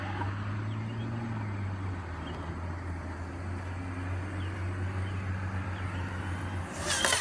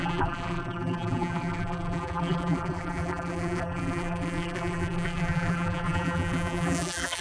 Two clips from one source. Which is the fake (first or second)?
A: second